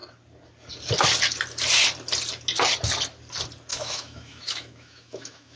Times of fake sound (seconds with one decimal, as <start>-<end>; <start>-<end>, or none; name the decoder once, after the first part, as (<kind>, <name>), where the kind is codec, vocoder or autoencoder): 3.7-5.6 (autoencoder, DAC-VAE)